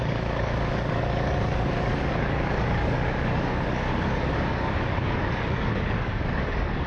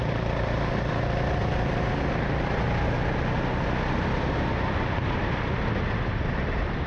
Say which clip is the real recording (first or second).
second